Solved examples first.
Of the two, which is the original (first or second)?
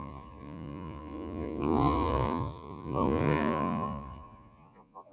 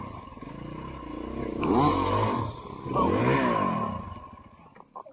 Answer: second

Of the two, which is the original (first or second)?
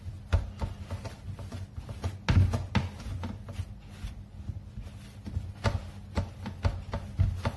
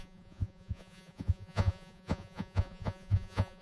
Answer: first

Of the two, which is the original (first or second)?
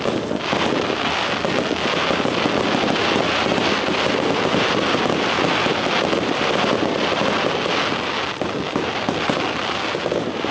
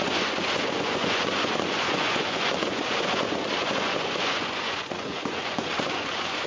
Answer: first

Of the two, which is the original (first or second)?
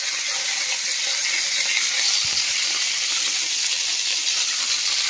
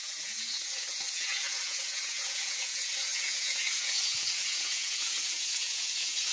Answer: first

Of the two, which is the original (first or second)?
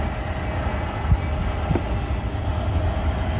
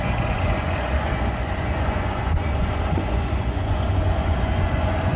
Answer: first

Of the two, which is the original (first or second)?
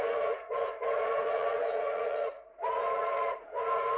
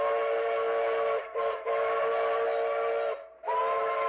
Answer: second